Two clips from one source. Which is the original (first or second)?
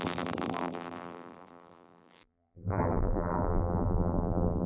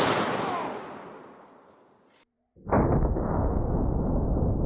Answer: second